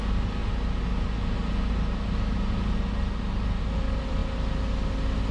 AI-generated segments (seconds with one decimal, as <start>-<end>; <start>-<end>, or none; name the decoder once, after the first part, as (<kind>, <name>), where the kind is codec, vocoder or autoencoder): 0.0-0.4 (vocoder, BigVGAN v2); 3.6-4.2